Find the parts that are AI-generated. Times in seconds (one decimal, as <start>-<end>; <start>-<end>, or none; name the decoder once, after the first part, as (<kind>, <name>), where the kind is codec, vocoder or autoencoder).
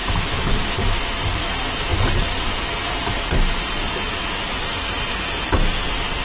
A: 0.0-1.0 (autoencoder, DAC-VAE)